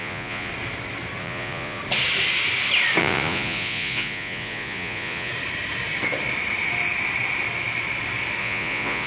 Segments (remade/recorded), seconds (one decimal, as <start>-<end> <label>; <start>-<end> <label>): 0.0-0.5 remade; 0.5-1.2 recorded; 1.2-1.8 remade; 1.8-3.0 recorded; 3.0-5.3 remade; 5.3-8.4 recorded; 8.4-9.1 remade